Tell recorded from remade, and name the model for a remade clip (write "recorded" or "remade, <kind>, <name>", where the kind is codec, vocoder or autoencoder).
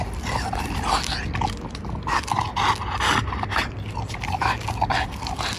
recorded